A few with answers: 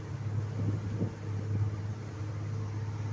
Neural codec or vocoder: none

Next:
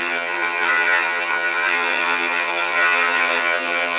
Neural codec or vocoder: vocoder, HiFi-GAN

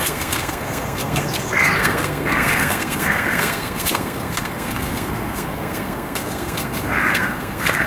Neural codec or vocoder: codec, SNAC